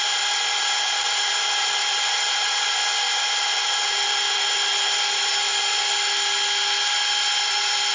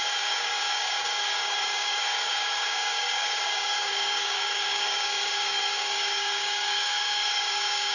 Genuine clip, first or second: first